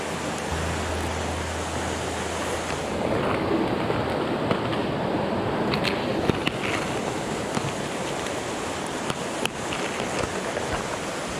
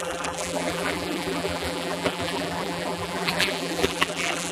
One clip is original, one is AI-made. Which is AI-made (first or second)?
second